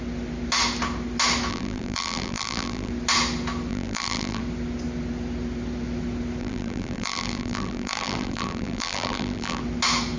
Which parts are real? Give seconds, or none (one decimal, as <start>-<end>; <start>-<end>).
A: 0.0-1.5; 2.9-3.7; 4.4-6.4; 9.6-10.2